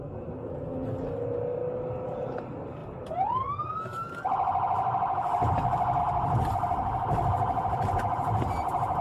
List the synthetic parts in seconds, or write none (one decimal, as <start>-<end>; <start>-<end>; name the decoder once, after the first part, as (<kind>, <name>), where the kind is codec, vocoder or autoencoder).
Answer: none